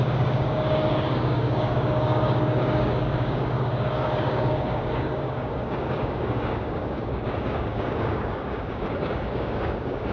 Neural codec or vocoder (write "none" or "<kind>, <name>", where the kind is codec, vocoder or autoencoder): codec, DAC